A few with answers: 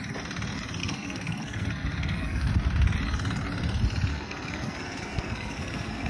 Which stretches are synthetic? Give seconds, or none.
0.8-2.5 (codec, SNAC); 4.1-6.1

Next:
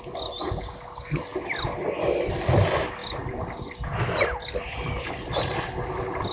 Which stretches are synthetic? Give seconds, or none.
none